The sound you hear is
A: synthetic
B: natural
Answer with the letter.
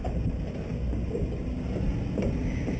B